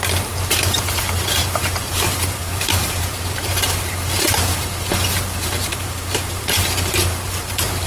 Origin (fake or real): fake